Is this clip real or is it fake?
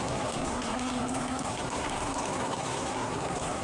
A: fake